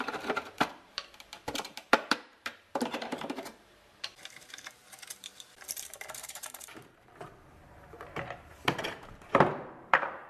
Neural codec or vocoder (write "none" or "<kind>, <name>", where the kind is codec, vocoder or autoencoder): vocoder, BigVGAN v2